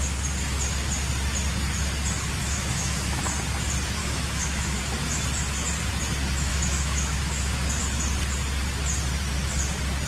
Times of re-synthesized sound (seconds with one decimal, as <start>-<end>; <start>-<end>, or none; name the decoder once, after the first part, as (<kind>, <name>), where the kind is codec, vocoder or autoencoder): 2.4-3.2 (autoencoder, DAC-VAE); 4.0-4.8; 6.5-7.8

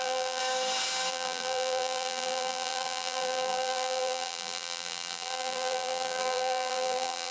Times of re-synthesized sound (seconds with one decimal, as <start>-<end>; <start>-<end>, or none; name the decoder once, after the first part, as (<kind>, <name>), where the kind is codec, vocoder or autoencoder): 0.0-0.4 (vocoder, BigVGAN v2); 1.1-7.3

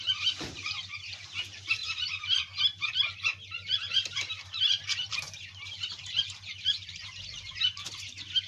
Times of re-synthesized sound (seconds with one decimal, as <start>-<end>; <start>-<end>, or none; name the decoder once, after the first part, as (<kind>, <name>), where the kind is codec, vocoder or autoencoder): 0.0-8.5 (vocoder, BigVGAN v2)

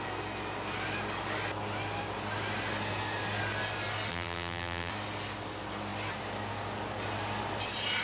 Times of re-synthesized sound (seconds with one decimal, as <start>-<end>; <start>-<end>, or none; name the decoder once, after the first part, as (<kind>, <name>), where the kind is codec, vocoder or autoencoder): 4.1-4.9 (vocoder, BigVGAN v2)

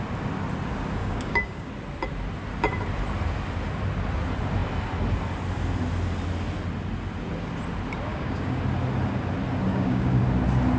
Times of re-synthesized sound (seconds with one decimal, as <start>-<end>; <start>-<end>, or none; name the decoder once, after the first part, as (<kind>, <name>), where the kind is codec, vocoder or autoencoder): 1.0-1.7 (codec, DAC); 8.1-8.6; 9.7-10.2

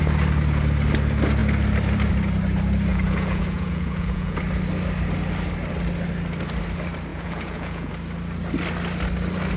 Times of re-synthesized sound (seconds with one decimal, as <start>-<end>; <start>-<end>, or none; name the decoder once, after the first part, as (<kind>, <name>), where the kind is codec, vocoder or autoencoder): 2.9-4.4 (vocoder, Vocos); 7.1-7.9